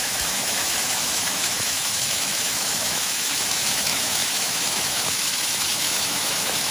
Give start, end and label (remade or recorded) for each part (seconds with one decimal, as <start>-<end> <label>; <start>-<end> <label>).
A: 0.0-6.7 remade